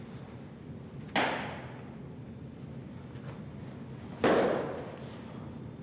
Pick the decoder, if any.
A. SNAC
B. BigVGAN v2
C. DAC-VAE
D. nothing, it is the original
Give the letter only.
D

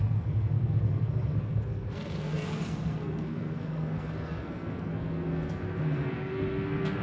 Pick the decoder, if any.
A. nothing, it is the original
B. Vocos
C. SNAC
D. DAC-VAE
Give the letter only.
C